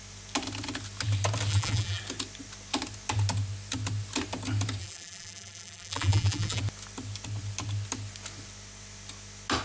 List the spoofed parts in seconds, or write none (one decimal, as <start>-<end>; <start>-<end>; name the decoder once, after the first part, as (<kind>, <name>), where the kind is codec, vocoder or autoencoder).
1.5-2.0 (vocoder, BigVGAN v2); 4.8-6.6